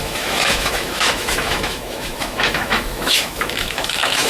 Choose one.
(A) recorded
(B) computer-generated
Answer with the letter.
B